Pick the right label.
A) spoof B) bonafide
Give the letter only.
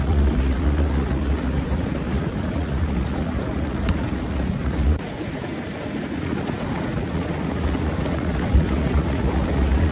A